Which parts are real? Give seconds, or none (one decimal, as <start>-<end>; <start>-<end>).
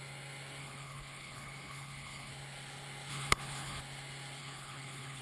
0.0-0.6; 2.3-3.1; 3.8-4.4